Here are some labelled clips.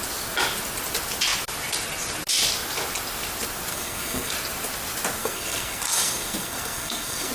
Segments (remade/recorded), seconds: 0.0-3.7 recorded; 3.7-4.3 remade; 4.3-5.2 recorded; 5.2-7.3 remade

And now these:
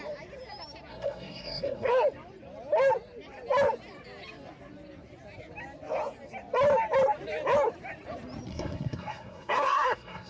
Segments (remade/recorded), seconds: 0.0-0.9 recorded; 0.9-1.9 remade; 1.9-8.5 recorded; 8.5-10.3 remade

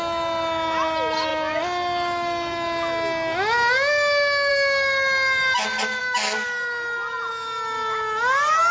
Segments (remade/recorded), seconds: 0.0-8.7 recorded

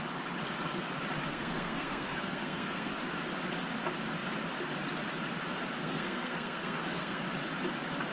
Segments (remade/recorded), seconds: 0.0-1.3 recorded; 1.3-2.9 remade; 2.9-5.8 recorded; 5.8-7.2 remade; 7.2-8.1 recorded

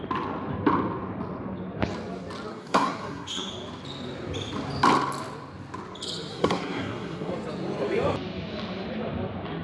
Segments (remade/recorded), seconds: 0.0-2.5 recorded; 2.5-3.5 remade; 3.5-6.3 recorded; 6.3-7.3 remade; 7.3-9.6 recorded

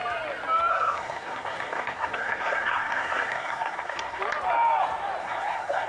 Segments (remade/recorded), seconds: 0.0-0.7 recorded; 0.7-4.2 remade; 4.2-5.2 recorded; 5.2-5.9 remade